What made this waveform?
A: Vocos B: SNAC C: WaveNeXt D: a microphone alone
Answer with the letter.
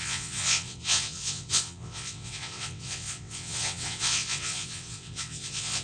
C